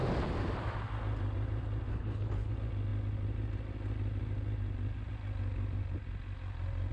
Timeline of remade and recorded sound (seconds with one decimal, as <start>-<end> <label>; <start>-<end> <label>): 0.0-1.9 recorded; 1.9-2.5 remade; 2.5-6.9 recorded